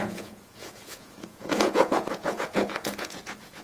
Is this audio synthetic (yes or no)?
yes